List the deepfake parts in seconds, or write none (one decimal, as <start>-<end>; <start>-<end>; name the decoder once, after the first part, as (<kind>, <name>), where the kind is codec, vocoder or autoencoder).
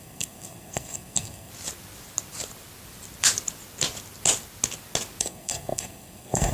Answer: 0.0-1.5 (codec, SNAC); 5.2-6.5